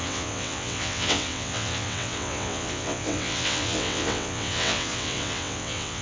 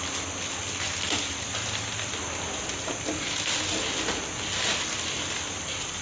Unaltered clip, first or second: second